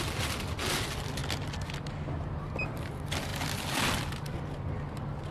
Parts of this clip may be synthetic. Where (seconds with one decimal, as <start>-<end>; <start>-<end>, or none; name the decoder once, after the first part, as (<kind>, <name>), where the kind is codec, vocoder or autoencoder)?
none